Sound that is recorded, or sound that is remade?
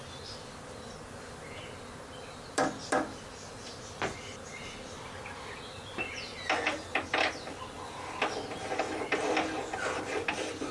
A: recorded